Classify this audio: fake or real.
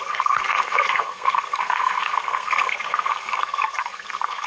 fake